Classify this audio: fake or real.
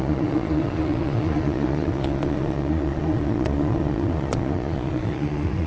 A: fake